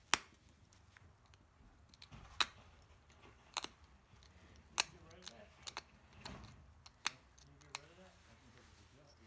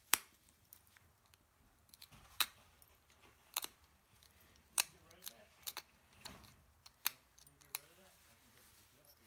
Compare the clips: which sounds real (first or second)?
first